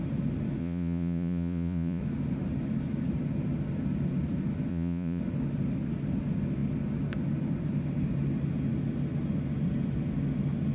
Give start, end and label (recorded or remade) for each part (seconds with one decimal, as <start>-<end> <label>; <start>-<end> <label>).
0.0-0.6 recorded; 0.6-2.0 remade; 2.0-4.7 recorded; 4.7-5.2 remade; 5.2-10.7 recorded